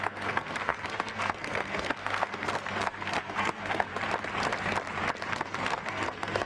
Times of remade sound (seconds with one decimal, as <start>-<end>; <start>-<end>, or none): 0.0-3.9; 5.3-6.5